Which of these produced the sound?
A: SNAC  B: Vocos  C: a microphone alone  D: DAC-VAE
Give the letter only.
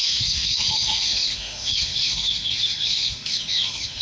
D